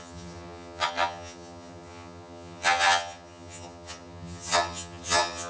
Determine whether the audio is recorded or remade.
remade